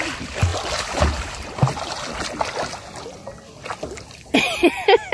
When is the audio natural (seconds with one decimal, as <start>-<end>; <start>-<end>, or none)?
0.0-5.1

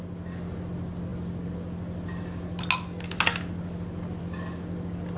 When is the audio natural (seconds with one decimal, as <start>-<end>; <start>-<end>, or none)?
0.0-5.2

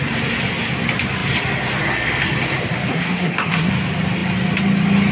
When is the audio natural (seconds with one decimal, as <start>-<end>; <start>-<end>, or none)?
0.0-2.9; 3.7-5.1

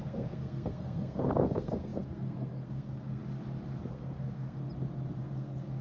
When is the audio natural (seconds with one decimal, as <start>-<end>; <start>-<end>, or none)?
3.2-3.9; 4.6-5.2

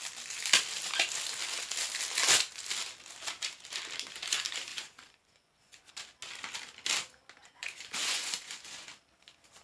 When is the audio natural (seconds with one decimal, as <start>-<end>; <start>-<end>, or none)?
0.0-4.7; 5.9-7.4; 8.9-9.6

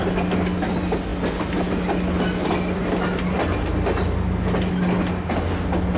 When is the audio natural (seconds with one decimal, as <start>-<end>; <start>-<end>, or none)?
0.0-6.0